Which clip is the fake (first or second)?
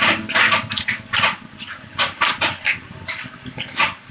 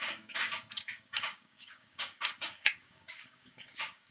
second